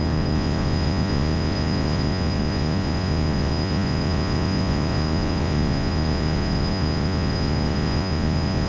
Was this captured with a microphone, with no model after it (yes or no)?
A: no